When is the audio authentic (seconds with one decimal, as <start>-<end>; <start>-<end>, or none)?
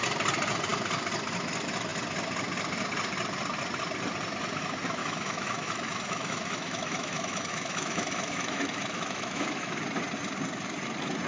0.0-5.0; 9.8-11.3